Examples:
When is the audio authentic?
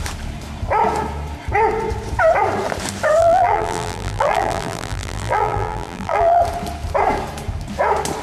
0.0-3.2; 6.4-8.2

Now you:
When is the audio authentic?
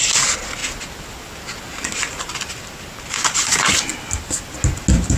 0.0-5.2